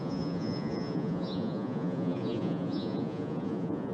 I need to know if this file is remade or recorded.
remade